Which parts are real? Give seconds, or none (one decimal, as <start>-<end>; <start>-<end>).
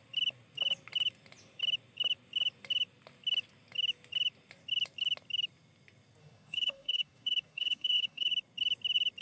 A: 0.0-6.2; 8.3-9.2